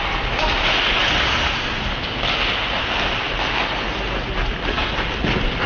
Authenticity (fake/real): real